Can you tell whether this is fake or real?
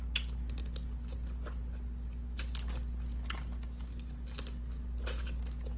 real